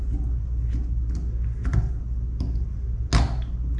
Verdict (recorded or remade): recorded